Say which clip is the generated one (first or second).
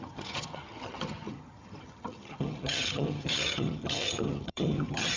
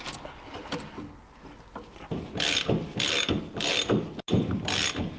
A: first